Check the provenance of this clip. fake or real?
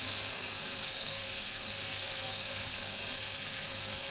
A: fake